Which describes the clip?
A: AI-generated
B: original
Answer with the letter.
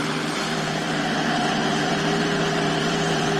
A